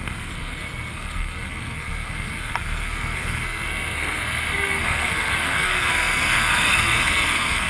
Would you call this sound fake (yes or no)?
yes